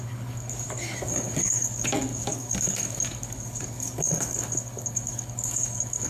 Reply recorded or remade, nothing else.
remade